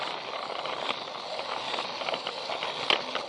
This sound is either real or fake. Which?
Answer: real